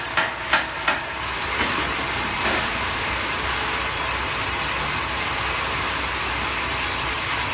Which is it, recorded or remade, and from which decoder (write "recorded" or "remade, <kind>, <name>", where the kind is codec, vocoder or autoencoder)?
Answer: recorded